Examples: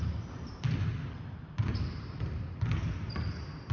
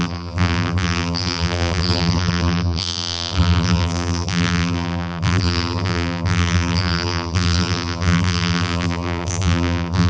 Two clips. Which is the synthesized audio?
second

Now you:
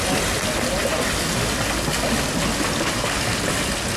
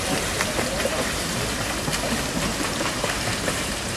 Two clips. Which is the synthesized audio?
second